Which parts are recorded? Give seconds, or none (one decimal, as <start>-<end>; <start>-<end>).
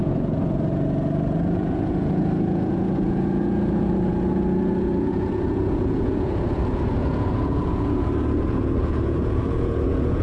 none